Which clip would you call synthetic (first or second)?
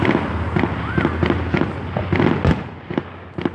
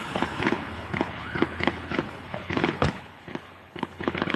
second